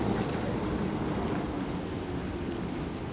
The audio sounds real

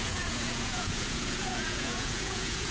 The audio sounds fake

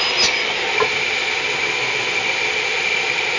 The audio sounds real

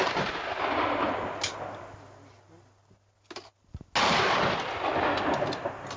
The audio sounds real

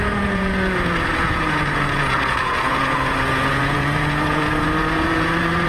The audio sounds fake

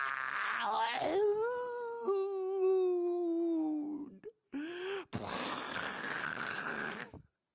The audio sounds real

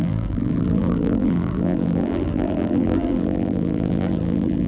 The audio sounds fake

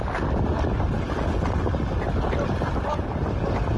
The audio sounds real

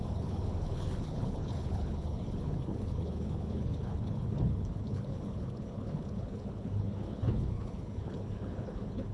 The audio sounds fake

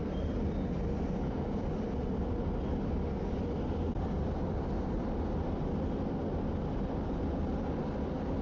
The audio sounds real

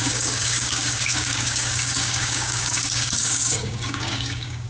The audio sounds fake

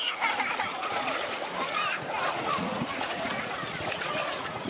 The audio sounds fake